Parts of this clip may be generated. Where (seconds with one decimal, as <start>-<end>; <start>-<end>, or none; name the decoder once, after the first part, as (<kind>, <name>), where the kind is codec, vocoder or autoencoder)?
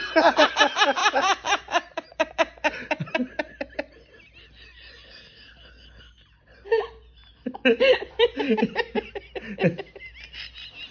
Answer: 0.0-0.5 (vocoder, BigVGAN v2); 1.0-2.3; 7.9-8.8